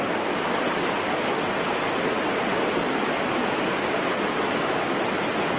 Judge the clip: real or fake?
real